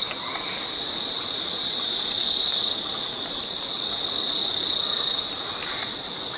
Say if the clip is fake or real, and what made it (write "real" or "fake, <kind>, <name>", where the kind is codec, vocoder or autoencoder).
real